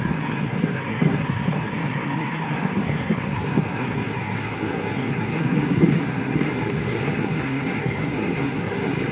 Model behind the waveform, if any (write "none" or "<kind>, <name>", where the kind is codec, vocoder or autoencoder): codec, SNAC